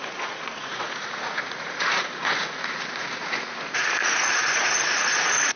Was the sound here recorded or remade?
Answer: remade